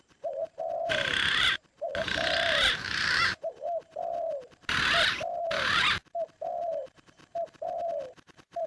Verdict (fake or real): fake